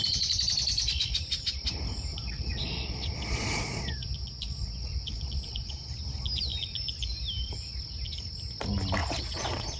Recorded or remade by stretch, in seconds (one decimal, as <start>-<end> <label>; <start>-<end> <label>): 0.0-2.1 recorded; 2.1-5.9 remade; 5.9-9.0 recorded; 9.0-9.8 remade